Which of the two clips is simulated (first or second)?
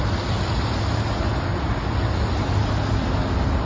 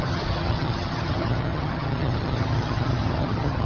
second